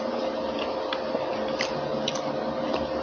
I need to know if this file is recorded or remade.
recorded